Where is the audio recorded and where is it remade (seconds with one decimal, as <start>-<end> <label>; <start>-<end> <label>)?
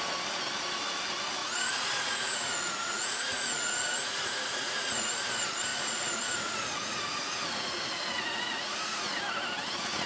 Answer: 0.0-1.4 recorded; 1.4-5.1 remade; 5.1-5.7 recorded; 5.7-9.2 remade; 9.2-10.1 recorded